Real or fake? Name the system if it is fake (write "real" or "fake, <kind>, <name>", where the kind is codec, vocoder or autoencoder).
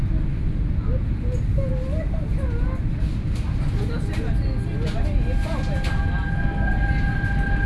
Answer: real